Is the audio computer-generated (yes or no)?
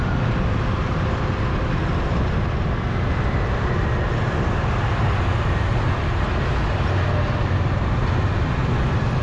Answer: no